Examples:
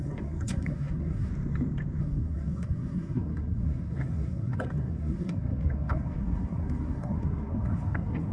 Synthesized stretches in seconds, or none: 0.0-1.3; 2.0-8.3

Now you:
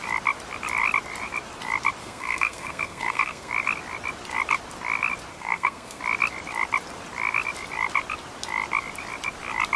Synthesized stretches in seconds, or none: 2.0-3.5; 5.3-6.0